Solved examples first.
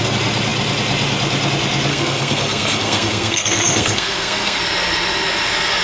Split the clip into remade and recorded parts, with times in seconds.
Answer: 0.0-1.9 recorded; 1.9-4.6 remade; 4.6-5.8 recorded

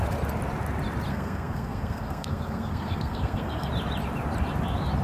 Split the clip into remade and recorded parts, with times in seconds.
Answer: 0.0-1.1 recorded; 1.1-3.7 remade; 3.7-5.0 recorded

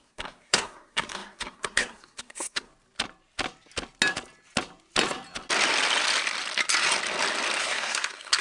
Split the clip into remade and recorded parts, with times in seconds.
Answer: 0.0-2.7 remade; 2.7-7.6 recorded; 7.6-8.4 remade

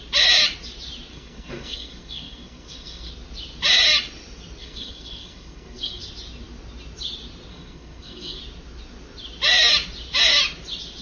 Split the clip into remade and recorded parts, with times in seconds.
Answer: 0.0-1.1 recorded; 1.1-3.1 remade; 3.1-4.6 recorded; 4.6-6.0 remade; 6.0-7.5 recorded; 7.5-8.4 remade; 8.4-11.0 recorded